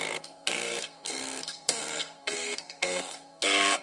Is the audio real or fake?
fake